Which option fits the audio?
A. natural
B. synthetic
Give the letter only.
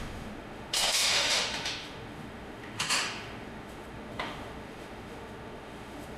B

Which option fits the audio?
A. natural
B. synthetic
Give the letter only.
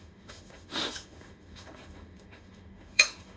B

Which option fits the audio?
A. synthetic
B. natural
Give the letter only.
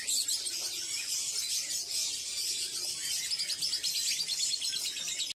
B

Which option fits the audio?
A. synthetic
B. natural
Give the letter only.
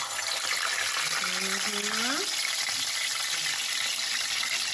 B